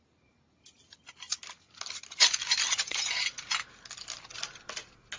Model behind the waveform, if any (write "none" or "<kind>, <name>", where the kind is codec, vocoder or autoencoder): none